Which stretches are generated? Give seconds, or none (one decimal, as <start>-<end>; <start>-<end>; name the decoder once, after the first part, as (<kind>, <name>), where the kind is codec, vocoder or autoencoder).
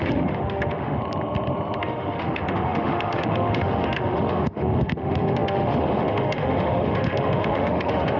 0.0-1.0 (autoencoder, DAC-VAE); 1.8-8.2